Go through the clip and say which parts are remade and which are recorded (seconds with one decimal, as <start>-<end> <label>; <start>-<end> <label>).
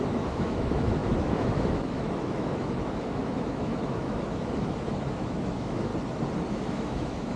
0.0-5.9 remade; 5.9-6.5 recorded; 6.5-7.4 remade